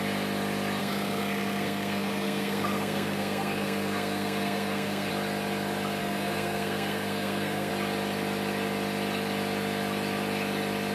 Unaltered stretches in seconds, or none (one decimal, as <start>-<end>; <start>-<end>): 0.0-0.8; 5.1-6.0; 7.7-10.9